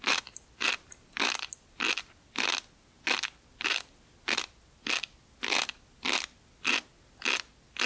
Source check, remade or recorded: recorded